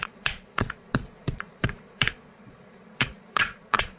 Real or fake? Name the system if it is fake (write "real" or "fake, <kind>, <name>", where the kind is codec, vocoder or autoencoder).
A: fake, vocoder, Vocos